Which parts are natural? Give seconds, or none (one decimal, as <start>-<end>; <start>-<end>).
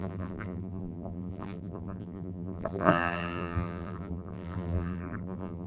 none